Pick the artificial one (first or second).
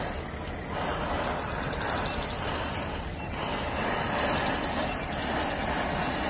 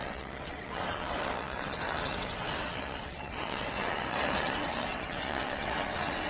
second